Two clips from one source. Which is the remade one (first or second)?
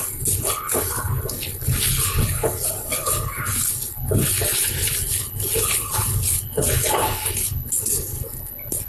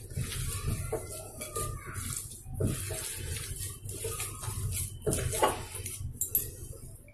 first